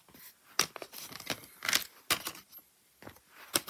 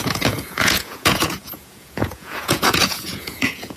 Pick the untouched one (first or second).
first